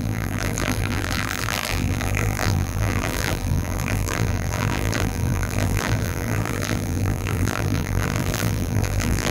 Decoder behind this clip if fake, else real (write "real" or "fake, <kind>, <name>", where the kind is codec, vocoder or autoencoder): fake, vocoder, BigVGAN v2